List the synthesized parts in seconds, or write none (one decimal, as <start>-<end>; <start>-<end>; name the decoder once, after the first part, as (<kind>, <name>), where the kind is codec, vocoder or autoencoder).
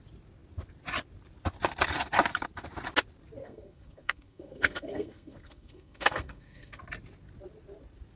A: 3.4-6.8 (codec, SNAC)